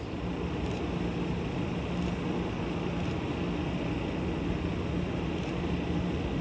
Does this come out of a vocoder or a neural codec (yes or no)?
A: no